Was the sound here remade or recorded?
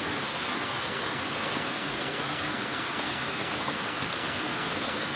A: remade